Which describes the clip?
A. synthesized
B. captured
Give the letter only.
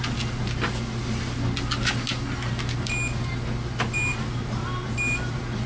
B